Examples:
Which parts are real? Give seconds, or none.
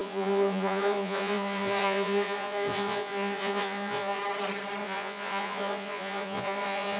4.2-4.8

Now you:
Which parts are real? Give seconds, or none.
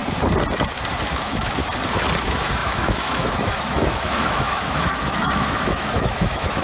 0.0-1.1; 1.6-2.2